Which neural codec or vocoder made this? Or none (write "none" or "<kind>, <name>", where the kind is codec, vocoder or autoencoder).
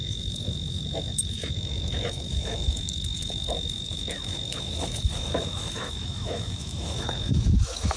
autoencoder, DAC-VAE